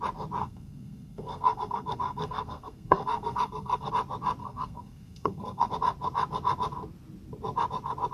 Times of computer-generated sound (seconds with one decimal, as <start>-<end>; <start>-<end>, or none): 0.4-3.9; 4.4-5.7